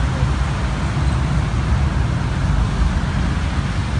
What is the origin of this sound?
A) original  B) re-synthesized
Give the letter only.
A